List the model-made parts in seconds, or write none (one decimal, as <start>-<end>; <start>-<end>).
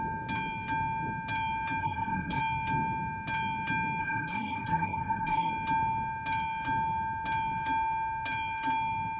1.8-2.4; 4.0-5.5